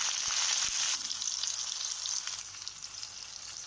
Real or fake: real